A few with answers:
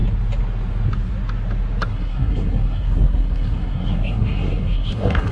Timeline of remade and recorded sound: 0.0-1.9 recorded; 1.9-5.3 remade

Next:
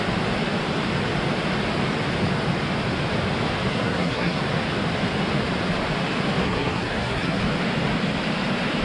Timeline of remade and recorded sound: 0.0-3.7 recorded; 3.7-4.4 remade; 4.4-6.4 recorded; 6.4-7.4 remade; 7.4-8.8 recorded